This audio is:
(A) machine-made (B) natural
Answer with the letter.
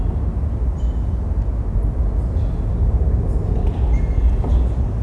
B